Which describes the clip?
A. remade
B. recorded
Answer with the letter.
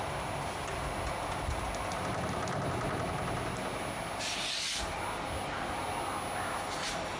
B